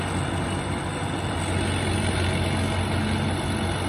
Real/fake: real